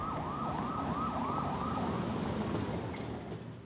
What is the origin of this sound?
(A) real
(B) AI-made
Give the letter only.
A